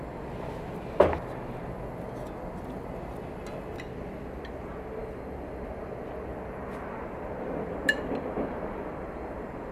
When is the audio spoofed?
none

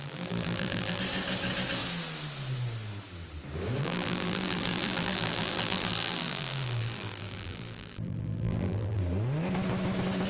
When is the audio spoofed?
0.0-1.0 (vocoder, BigVGAN v2); 3.8-9.0

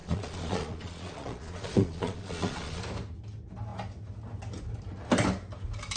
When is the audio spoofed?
0.0-2.8 (vocoder, Vocos)

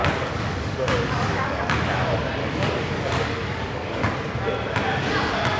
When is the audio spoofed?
0.0-1.6 (codec, DAC); 2.4-4.1

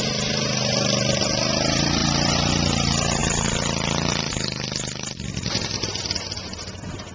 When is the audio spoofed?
2.0-2.5 (vocoder, BigVGAN v2); 3.2-4.3

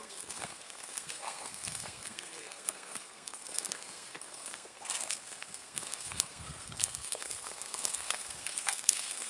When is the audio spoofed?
0.0-9.3 (codec, SNAC)

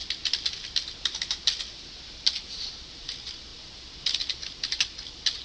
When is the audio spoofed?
none